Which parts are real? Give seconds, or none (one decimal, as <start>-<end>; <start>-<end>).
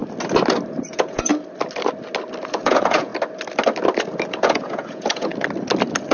0.0-0.9; 1.3-2.4; 3.1-4.3; 5.3-6.1